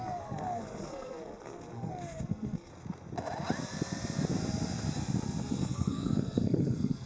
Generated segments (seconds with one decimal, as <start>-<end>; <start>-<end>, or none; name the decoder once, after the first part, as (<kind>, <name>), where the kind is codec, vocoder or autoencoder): 0.0-2.7 (codec, SNAC); 5.4-7.1

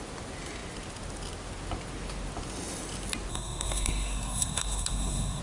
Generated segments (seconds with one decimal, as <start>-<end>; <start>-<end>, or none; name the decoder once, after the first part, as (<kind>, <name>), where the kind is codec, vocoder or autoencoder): 3.3-5.4 (codec, SNAC)

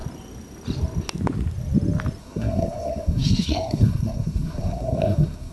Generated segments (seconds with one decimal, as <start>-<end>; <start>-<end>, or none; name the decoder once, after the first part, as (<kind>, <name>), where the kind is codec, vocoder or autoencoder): 2.2-5.5 (codec, SNAC)